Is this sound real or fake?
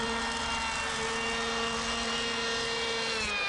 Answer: real